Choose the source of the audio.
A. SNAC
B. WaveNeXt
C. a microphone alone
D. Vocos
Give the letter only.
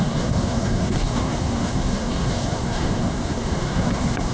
A